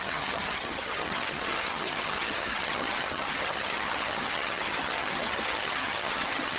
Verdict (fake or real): fake